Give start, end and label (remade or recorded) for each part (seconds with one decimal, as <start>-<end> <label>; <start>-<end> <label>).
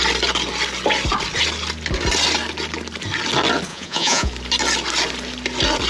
0.0-3.7 recorded; 3.7-4.3 remade; 4.3-5.9 recorded